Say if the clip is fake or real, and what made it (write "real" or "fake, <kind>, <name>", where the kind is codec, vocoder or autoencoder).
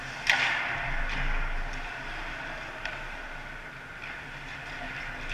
real